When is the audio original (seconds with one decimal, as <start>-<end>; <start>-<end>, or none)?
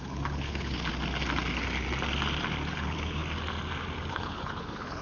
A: 0.9-2.7; 3.2-4.1